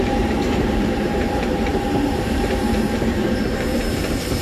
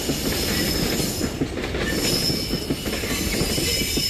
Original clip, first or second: second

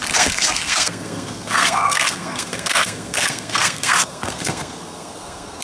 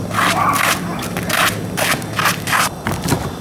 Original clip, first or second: second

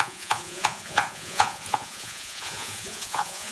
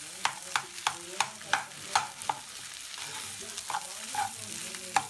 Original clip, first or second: second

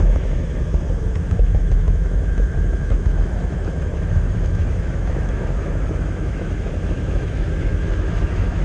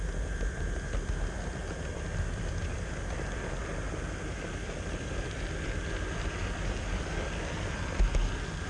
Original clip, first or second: second